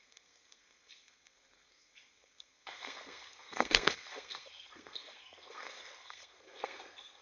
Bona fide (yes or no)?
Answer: no